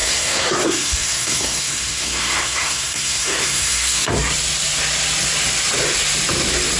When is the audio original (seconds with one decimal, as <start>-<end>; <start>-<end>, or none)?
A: 4.1-6.8